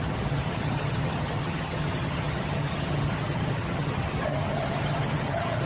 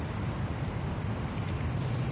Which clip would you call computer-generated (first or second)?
first